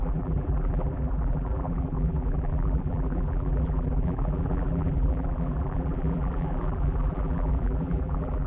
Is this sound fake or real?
fake